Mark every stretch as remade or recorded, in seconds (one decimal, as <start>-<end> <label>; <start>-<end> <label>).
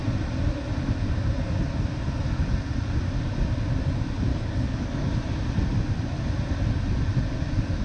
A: 0.0-4.3 recorded; 4.3-5.1 remade; 5.1-7.8 recorded